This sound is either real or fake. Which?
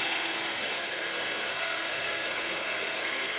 fake